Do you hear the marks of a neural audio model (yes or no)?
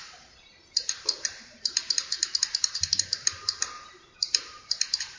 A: yes